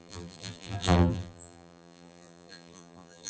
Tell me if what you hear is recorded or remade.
remade